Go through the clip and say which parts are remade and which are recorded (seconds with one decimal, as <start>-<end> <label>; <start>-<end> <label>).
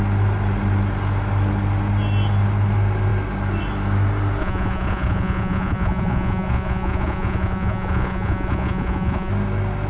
0.0-4.4 recorded; 4.4-9.3 remade; 9.3-9.9 recorded